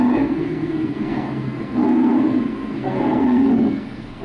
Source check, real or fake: fake